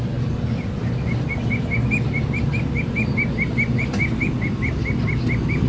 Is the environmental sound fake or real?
real